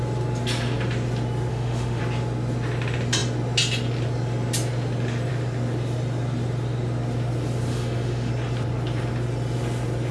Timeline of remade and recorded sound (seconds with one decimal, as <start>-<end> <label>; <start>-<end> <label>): 0.0-1.5 recorded; 1.5-2.0 remade; 2.0-7.7 recorded; 7.7-8.3 remade; 8.3-10.1 recorded